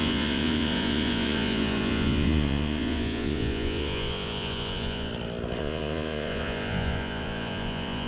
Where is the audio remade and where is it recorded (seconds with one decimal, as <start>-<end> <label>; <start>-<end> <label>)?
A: 0.0-5.1 remade; 5.1-5.6 recorded; 5.6-8.1 remade